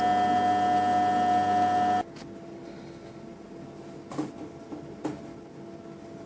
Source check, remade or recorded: recorded